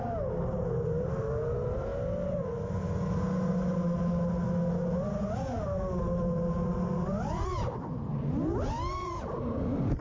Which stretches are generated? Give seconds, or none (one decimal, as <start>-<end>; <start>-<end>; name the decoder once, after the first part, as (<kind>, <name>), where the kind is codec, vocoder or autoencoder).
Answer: none

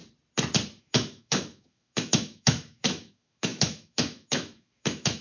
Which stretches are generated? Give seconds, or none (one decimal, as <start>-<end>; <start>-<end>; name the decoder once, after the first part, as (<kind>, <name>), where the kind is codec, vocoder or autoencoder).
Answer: 0.8-5.2 (autoencoder, DAC-VAE)

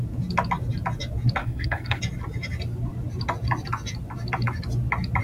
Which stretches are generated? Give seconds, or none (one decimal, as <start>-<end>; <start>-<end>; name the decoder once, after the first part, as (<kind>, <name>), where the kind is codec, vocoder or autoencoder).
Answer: 1.4-2.0 (codec, SNAC)